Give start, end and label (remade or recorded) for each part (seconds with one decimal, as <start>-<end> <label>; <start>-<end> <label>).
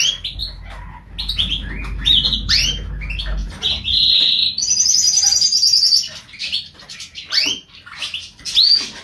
0.0-9.0 recorded